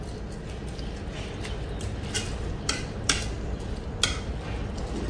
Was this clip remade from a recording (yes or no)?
no